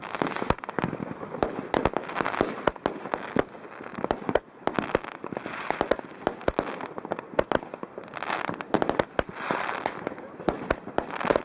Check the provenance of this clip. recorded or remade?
recorded